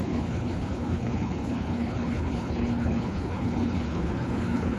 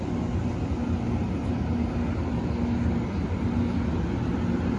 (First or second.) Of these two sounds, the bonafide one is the second